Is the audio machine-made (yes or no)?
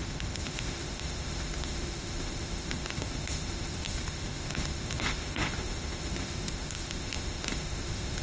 yes